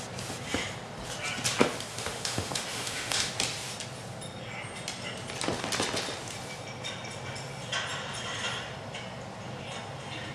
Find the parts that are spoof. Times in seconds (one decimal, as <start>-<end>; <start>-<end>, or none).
1.9-3.3